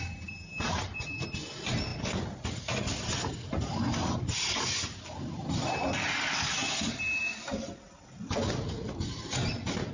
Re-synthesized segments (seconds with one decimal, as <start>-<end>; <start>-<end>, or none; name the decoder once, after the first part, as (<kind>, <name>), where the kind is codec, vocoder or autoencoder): 7.2-8.9 (vocoder, BigVGAN v2)